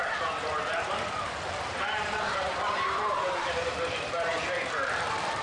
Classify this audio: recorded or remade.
remade